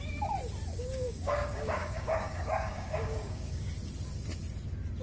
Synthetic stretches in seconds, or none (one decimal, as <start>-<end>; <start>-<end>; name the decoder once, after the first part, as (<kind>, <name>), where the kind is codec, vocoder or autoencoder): 0.7-3.7 (codec, DAC)